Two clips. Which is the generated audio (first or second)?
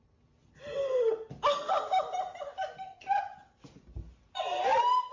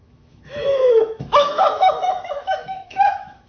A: second